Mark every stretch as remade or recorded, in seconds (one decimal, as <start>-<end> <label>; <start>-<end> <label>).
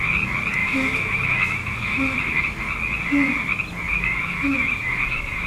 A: 0.0-0.6 recorded; 0.6-2.4 remade; 2.4-3.9 recorded; 3.9-5.5 remade